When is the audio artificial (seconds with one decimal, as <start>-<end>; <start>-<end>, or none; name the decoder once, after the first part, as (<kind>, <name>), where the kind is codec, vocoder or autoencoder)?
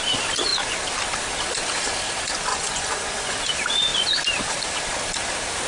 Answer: 2.5-3.4 (vocoder, Vocos)